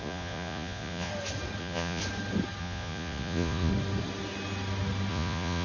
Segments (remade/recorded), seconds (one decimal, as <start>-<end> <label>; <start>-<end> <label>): 0.0-1.1 remade; 1.1-1.6 recorded; 1.6-2.0 remade; 2.0-2.6 recorded; 2.6-3.7 remade; 3.7-5.1 recorded; 5.1-5.6 remade